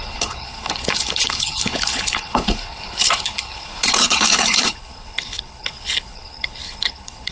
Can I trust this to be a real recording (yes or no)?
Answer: no